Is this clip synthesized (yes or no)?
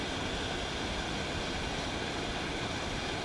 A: no